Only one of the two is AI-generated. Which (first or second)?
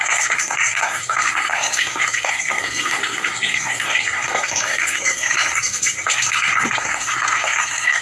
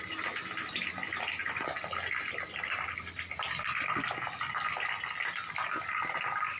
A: first